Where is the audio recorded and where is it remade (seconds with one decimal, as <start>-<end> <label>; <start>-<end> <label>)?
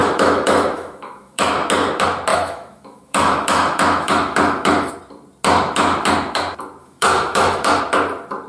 0.0-1.5 remade; 1.5-2.3 recorded; 2.3-4.9 remade; 4.9-6.8 recorded; 6.8-7.8 remade; 7.8-8.5 recorded